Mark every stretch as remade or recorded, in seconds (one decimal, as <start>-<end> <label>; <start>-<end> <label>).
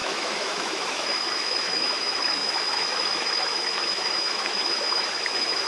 0.0-5.7 remade